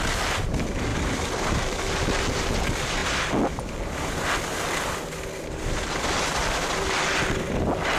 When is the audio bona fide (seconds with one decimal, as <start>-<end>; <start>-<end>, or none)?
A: 0.0-0.9; 1.8-8.0